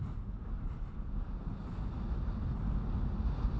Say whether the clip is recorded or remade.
recorded